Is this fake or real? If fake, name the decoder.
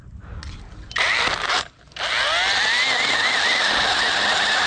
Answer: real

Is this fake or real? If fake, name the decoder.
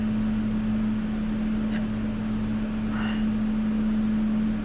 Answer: real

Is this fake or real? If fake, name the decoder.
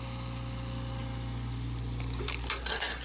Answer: real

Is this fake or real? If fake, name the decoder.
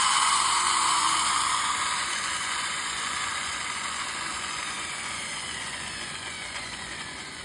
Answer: fake, vocoder, Vocos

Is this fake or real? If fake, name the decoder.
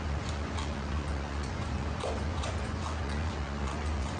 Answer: fake, vocoder, Vocos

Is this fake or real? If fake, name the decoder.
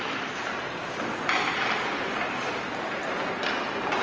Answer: real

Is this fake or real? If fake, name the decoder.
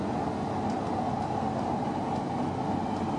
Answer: real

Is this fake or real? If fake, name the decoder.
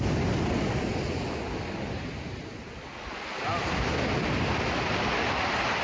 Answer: real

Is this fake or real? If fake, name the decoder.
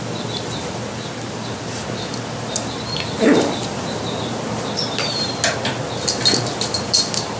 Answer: real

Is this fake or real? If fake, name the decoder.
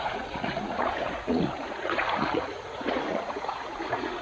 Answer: fake, vocoder, Vocos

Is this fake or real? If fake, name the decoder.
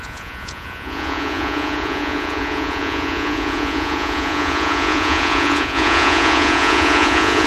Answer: fake, vocoder, Vocos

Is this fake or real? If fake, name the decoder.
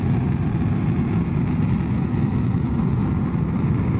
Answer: real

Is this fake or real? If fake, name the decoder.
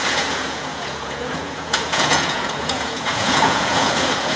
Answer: fake, vocoder, Vocos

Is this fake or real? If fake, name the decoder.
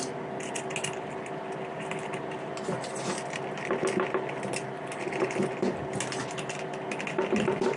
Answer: real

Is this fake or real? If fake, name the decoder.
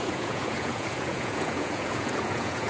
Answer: fake, vocoder, Vocos